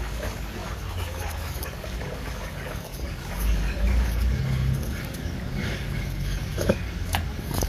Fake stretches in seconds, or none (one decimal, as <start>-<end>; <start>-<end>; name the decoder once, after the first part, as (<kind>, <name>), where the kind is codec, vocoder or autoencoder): 0.0-7.7 (codec, DAC)

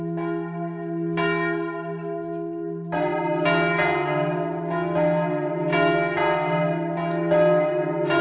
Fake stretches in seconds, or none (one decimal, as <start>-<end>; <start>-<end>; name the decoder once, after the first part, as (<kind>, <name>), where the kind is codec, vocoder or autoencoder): none

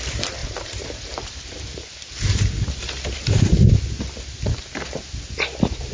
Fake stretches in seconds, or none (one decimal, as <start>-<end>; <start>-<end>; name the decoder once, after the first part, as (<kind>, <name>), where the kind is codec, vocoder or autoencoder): none

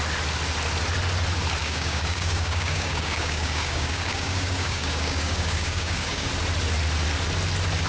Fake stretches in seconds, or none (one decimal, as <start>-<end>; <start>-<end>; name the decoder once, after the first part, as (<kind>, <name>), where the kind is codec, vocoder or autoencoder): 1.6-6.3 (codec, DAC)